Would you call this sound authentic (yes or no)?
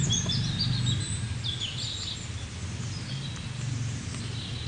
yes